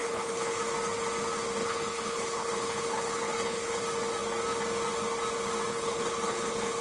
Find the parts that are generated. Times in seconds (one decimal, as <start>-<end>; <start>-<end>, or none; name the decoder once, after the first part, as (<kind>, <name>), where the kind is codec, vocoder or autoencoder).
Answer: 0.0-0.6 (codec, HILCodec); 1.6-3.8; 5.7-6.8